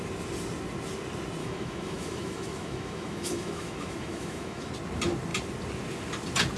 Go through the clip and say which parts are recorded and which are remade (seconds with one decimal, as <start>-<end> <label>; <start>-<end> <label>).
0.0-1.4 recorded; 1.4-4.7 remade; 4.7-6.6 recorded